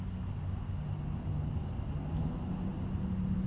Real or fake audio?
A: real